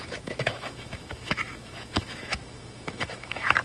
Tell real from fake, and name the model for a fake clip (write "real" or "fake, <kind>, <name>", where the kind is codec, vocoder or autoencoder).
fake, autoencoder, DAC-VAE